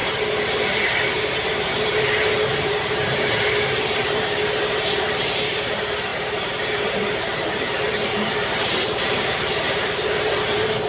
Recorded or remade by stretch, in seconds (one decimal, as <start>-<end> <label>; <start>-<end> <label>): 0.0-10.9 remade